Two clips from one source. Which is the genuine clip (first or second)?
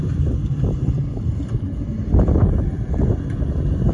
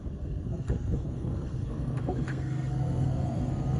first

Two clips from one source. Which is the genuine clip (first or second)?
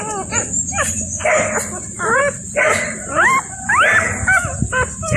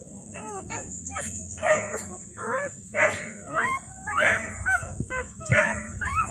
first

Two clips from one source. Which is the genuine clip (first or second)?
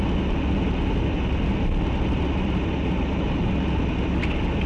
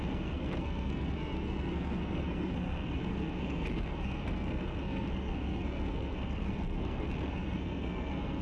first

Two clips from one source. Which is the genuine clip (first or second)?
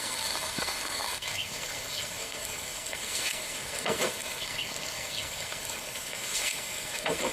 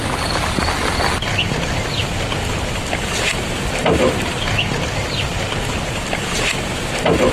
second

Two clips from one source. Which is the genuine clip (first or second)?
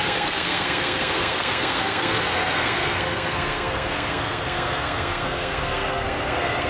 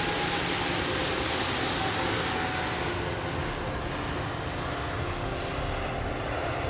second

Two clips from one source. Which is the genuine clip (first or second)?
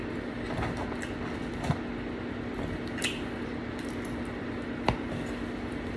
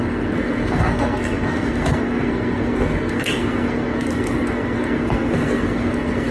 first